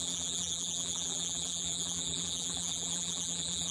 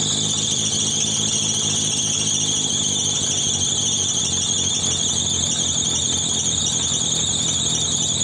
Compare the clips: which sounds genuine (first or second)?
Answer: second